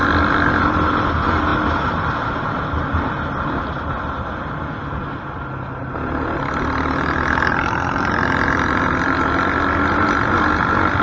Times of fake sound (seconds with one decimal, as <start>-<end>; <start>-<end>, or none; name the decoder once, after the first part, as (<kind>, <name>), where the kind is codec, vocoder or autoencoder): 1.5-4.6 (vocoder, BigVGAN v2)